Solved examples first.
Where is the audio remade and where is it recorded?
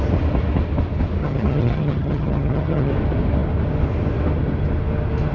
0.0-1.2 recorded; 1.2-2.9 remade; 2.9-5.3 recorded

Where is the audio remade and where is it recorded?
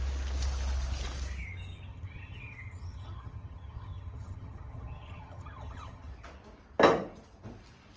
0.0-1.9 recorded; 1.9-6.1 remade; 6.1-8.0 recorded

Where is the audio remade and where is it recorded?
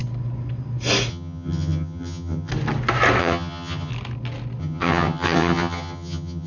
0.0-1.1 recorded; 1.1-2.5 remade; 2.5-3.2 recorded; 3.2-3.9 remade; 3.9-4.6 recorded; 4.6-6.5 remade